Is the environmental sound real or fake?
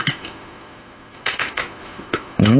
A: fake